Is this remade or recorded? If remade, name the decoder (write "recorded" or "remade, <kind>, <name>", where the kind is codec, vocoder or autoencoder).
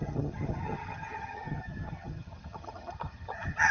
remade, vocoder, HiFi-GAN